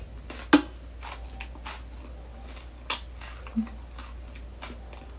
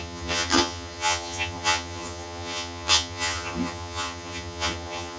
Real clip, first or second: first